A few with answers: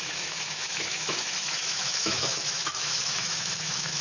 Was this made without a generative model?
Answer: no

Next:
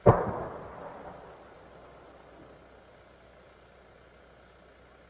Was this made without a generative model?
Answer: yes